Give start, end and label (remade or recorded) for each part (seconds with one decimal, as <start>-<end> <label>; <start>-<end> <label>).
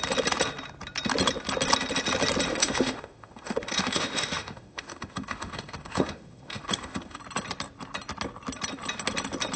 0.0-2.5 recorded; 2.5-7.2 remade; 7.2-9.6 recorded